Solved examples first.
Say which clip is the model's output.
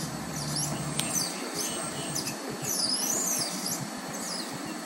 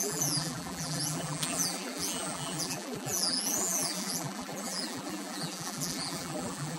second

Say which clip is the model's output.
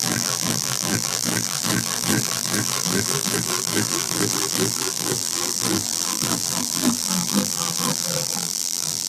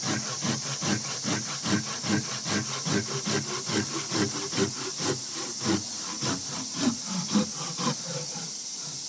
first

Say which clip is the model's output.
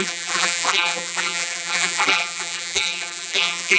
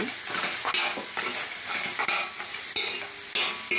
first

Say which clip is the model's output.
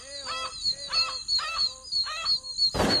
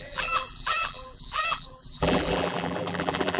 second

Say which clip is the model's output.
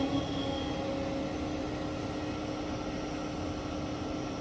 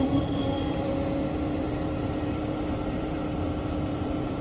second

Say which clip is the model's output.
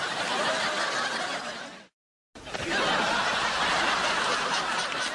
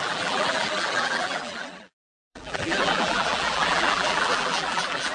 second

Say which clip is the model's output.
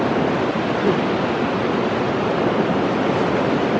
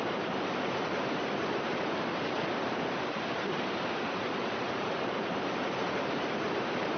second